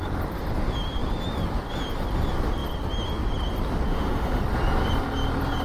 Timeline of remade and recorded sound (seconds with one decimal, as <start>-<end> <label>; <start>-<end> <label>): 0.0-3.9 recorded; 3.9-4.4 remade; 4.4-5.6 recorded